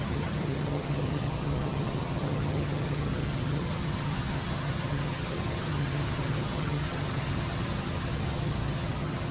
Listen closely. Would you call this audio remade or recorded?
remade